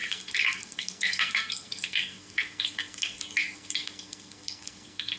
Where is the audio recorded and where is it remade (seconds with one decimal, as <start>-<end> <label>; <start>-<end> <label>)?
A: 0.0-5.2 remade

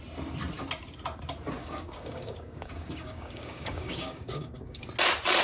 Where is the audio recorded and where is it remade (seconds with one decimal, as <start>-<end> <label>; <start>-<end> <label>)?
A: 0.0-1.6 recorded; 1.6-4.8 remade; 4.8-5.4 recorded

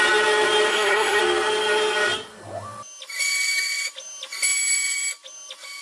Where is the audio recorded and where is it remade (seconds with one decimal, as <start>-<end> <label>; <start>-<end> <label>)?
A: 0.0-0.7 recorded; 0.7-1.2 remade; 1.2-5.8 recorded